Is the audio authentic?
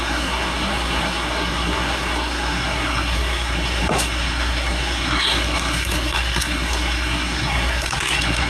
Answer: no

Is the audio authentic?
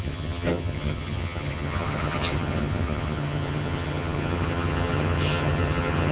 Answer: no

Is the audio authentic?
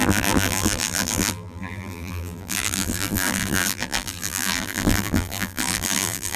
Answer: no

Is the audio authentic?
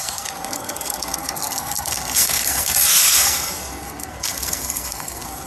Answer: no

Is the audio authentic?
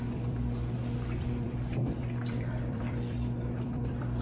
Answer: no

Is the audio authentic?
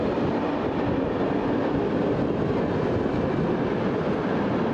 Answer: yes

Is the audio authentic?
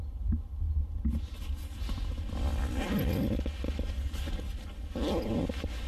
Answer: yes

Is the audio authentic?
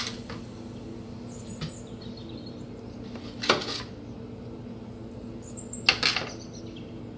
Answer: yes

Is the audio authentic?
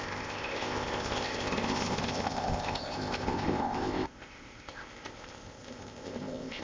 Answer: no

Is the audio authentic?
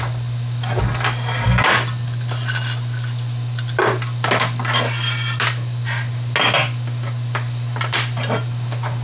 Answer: yes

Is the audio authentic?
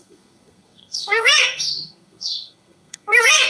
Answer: no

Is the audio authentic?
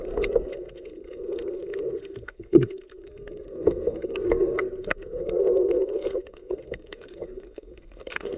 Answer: no